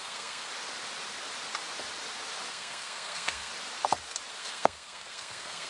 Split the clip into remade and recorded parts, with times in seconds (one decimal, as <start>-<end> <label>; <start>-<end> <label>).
0.0-0.5 remade; 0.5-2.5 recorded; 2.5-3.5 remade; 3.5-4.3 recorded; 4.3-5.7 remade